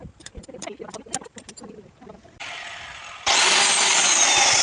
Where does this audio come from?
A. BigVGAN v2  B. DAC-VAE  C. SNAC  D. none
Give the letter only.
A